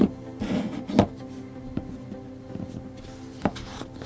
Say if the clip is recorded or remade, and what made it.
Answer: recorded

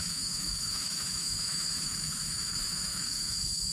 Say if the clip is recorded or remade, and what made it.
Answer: remade, autoencoder, DAC-VAE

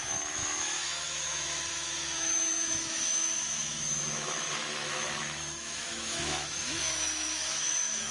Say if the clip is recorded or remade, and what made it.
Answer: remade, autoencoder, DAC-VAE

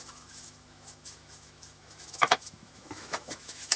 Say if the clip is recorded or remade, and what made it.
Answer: remade, autoencoder, DAC-VAE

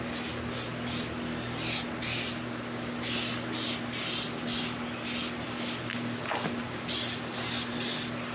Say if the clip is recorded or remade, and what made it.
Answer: recorded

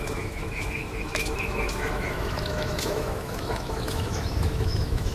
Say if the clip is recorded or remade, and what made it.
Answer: remade, autoencoder, DAC-VAE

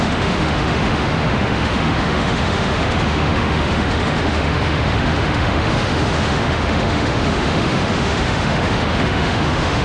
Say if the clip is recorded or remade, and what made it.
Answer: remade, autoencoder, DAC-VAE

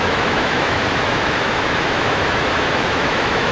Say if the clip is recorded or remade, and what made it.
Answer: remade, autoencoder, DAC-VAE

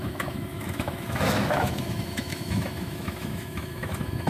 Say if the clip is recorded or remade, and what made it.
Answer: remade, autoencoder, DAC-VAE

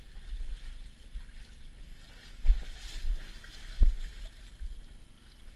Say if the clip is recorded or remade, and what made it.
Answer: recorded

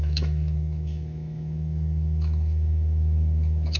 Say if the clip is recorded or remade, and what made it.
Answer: remade, autoencoder, DAC-VAE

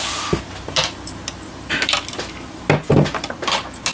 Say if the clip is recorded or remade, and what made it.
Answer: recorded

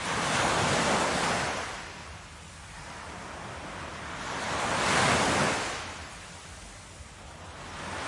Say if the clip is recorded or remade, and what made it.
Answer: recorded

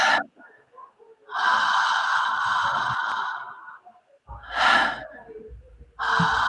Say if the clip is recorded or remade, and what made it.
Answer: recorded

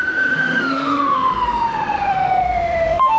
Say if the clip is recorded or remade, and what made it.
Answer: remade, autoencoder, DAC-VAE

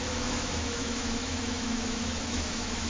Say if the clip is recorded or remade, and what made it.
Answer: remade, autoencoder, DAC-VAE